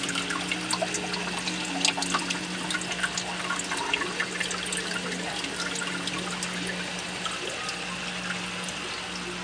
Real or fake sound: real